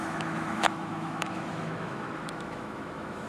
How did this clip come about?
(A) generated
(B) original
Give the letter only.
A